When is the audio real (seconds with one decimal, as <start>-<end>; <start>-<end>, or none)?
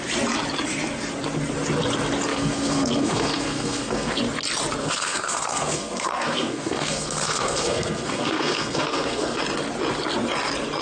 0.0-2.3; 4.2-4.8; 9.4-10.8